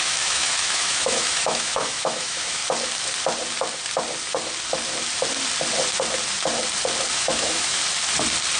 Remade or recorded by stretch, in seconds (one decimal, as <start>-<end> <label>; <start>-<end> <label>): 0.0-2.6 remade; 2.6-7.1 recorded; 7.1-7.8 remade; 7.8-8.6 recorded

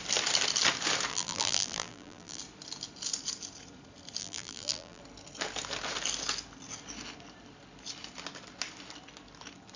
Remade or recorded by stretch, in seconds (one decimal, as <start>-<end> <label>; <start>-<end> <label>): 0.0-1.1 recorded; 1.1-2.4 remade; 2.4-4.2 recorded; 4.2-5.0 remade; 5.0-9.8 recorded

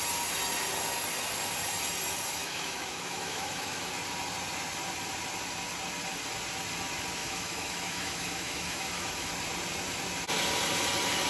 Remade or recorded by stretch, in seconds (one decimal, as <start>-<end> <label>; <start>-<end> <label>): 0.0-2.4 recorded; 2.4-3.9 remade; 3.9-7.2 recorded; 7.2-9.3 remade; 9.3-11.3 recorded

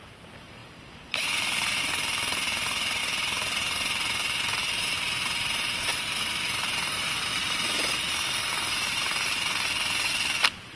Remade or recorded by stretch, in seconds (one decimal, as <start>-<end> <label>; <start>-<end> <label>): 0.0-10.8 remade

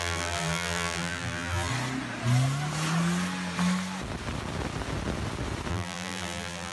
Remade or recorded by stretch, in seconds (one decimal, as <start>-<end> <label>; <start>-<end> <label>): 0.0-1.7 remade; 1.7-5.7 recorded; 5.7-6.7 remade

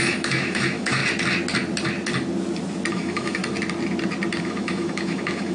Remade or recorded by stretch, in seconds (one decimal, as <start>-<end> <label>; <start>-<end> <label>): 0.0-1.0 remade; 1.0-2.9 recorded; 2.9-3.4 remade; 3.4-4.4 recorded; 4.4-5.5 remade

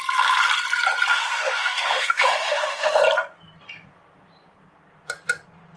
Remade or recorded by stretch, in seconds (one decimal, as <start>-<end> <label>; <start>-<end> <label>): 0.0-1.1 recorded; 1.1-3.0 remade; 3.0-5.8 recorded

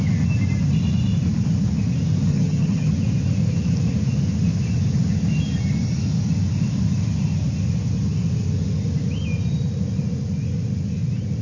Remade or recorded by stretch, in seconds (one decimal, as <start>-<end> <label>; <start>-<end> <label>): 0.0-2.3 recorded; 2.3-2.9 remade; 2.9-11.4 recorded